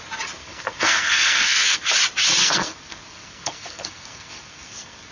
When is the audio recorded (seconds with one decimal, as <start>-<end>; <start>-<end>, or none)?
0.0-0.4; 1.9-2.4